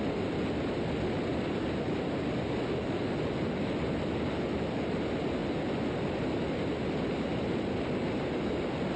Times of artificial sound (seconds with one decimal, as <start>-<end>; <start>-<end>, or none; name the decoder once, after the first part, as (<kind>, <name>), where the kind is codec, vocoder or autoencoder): none